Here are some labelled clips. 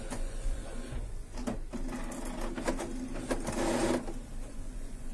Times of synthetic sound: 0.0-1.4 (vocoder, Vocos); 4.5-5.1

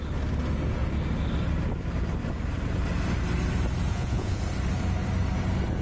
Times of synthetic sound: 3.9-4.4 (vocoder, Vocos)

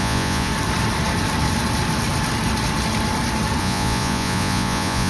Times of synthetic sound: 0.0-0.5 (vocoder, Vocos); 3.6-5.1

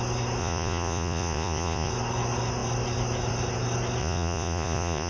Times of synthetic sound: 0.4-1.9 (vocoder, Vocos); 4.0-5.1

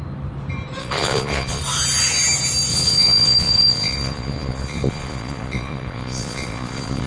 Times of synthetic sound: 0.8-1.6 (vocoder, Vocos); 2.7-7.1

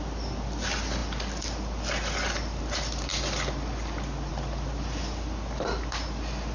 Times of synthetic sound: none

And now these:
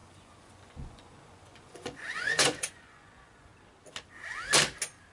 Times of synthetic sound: 0.0-3.5 (vocoder, Vocos)